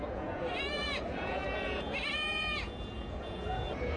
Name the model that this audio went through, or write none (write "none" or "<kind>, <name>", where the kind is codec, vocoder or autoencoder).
vocoder, Vocos